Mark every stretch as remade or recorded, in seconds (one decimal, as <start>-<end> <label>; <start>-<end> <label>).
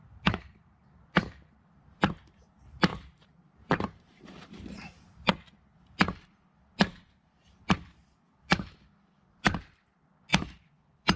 0.0-2.9 recorded; 2.9-5.3 remade; 5.3-10.3 recorded; 10.3-11.2 remade